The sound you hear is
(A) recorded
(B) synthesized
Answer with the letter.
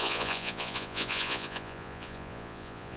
B